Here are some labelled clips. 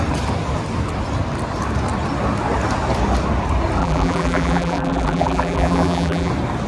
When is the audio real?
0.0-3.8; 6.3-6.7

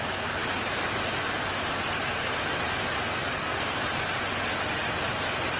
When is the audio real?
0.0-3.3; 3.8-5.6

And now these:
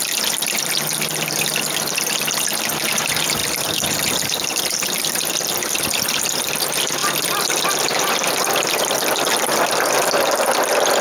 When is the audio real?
0.0-11.0

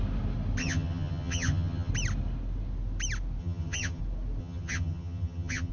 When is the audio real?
0.0-0.6; 1.9-3.4; 4.0-4.4

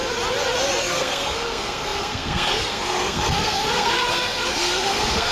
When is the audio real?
0.0-0.8